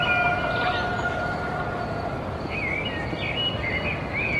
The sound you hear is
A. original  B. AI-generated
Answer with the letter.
A